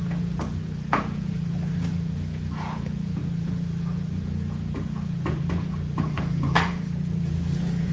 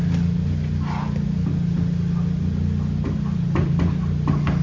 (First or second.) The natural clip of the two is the second